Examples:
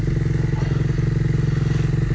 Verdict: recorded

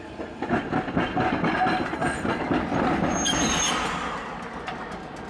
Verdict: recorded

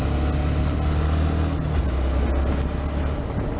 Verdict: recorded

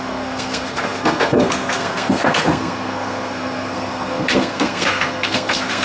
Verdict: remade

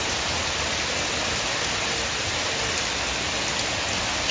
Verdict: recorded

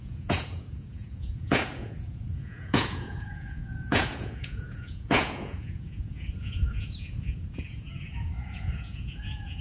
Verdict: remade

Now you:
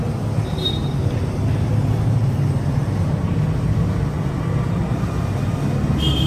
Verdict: recorded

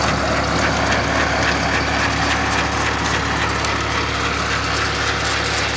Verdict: recorded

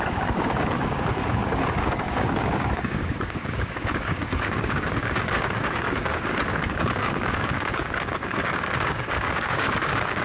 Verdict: remade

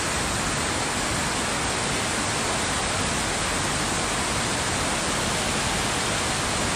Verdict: recorded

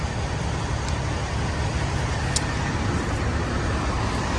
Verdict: recorded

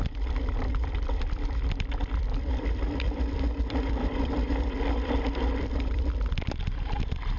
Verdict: remade